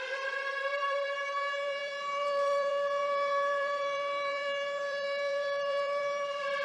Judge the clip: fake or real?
fake